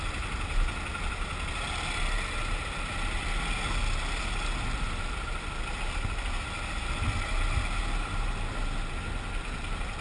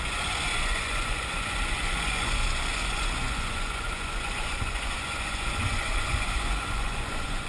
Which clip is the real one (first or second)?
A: first